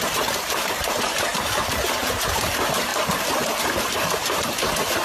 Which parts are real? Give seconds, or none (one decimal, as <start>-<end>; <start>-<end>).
2.9-3.8